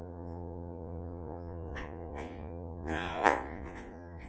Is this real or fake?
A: fake